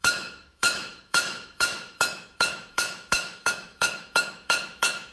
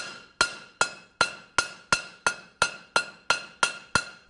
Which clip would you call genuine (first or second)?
second